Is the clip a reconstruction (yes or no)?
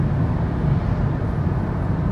no